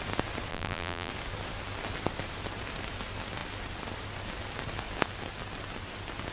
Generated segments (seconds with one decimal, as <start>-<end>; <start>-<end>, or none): 0.5-1.1